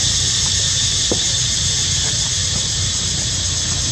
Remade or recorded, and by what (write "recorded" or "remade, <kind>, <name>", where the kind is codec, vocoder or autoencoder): recorded